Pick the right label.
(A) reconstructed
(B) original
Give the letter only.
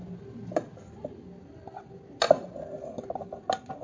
B